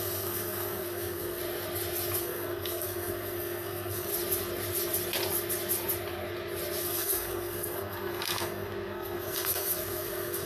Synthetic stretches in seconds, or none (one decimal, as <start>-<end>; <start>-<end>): 0.0-1.4; 2.2-4.1; 6.8-10.5